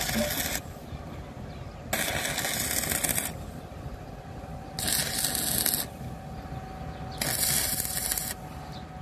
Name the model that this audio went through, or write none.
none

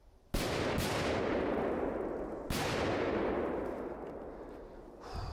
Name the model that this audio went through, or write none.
none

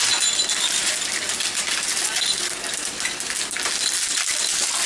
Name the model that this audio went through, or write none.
none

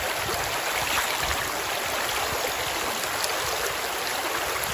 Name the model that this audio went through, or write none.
none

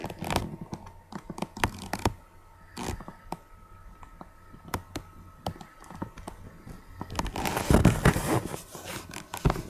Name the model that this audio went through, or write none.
none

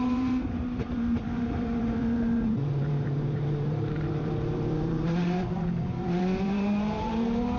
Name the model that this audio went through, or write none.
vocoder, BigVGAN v2